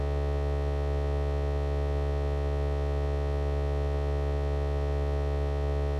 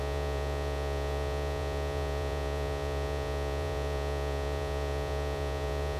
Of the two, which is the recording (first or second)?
first